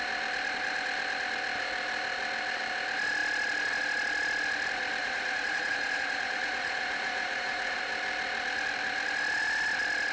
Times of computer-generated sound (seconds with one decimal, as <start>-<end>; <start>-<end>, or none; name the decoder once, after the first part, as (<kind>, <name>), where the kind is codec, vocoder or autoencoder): 5.0-7.9 (vocoder, Vocos)